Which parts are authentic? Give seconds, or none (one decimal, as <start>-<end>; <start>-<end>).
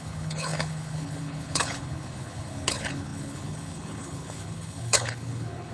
none